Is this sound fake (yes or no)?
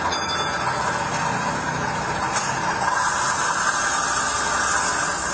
no